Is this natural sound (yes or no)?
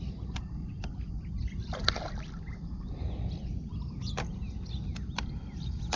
yes